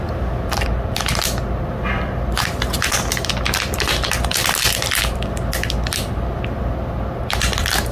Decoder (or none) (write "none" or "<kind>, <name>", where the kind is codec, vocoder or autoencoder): none